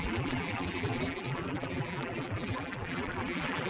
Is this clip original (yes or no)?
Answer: no